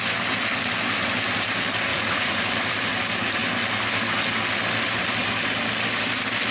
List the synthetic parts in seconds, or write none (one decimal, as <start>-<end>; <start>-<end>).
1.9-2.4